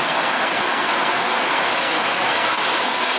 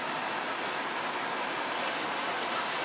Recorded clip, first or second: second